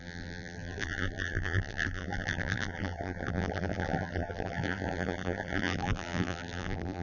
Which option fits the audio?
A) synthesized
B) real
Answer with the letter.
A